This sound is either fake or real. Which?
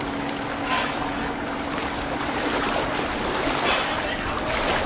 real